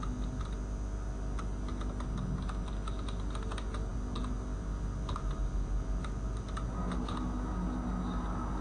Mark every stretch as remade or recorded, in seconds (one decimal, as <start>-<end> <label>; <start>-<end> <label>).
0.0-8.6 recorded